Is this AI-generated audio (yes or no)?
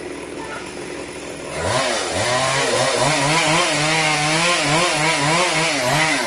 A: no